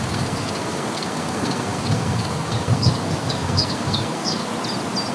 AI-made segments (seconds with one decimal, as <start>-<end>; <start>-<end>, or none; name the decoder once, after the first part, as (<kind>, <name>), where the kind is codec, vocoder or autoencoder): 0.0-4.5 (codec, SNAC)